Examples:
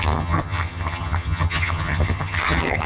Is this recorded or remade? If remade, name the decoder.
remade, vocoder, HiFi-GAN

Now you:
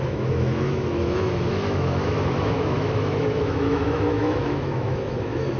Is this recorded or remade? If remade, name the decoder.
remade, autoencoder, DAC-VAE